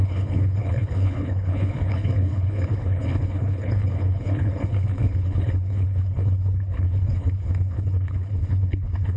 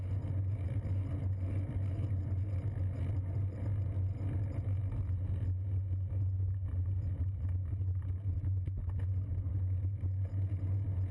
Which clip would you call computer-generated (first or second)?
first